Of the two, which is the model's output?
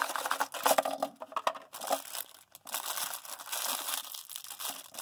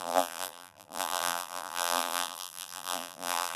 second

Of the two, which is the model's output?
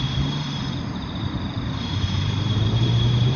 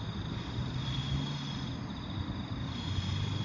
first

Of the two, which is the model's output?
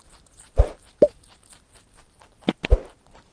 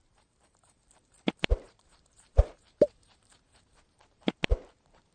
second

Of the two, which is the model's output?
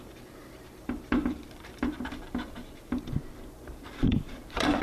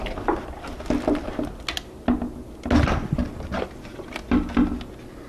first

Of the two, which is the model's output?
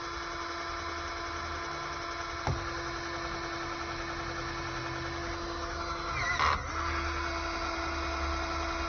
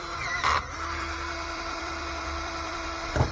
second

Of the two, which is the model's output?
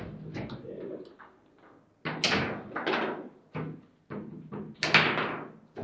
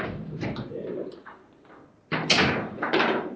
second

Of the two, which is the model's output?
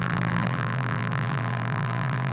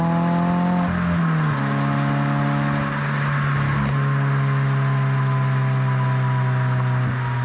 first